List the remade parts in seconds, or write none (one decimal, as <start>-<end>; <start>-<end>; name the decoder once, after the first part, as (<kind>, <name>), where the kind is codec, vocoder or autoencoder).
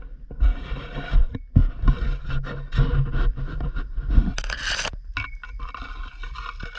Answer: none